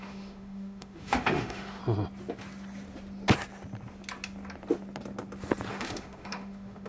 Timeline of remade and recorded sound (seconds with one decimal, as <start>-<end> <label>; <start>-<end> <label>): 0.0-1.8 remade; 1.8-5.7 recorded; 5.7-6.9 remade